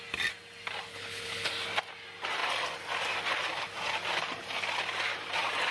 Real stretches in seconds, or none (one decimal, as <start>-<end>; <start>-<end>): 0.0-0.9; 1.5-5.7